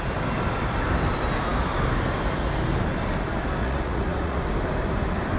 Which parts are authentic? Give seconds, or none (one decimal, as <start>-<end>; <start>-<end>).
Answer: 0.0-3.6; 4.4-5.4